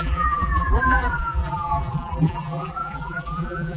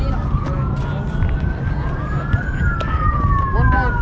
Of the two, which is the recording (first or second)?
second